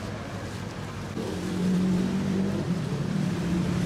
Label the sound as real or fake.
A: fake